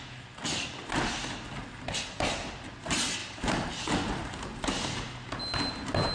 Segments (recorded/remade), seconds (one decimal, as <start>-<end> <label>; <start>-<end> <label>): 0.0-3.2 recorded; 3.2-3.7 remade; 3.7-6.1 recorded